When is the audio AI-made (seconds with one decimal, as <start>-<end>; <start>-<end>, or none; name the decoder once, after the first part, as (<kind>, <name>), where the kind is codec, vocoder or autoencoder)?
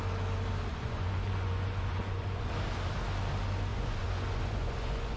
0.7-2.5 (vocoder, Vocos); 3.7-5.2